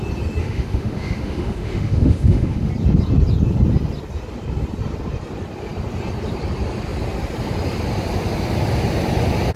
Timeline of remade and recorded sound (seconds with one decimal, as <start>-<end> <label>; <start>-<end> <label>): 0.0-0.4 recorded; 0.4-2.7 remade; 2.7-9.6 recorded